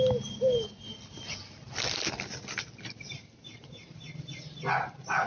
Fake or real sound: real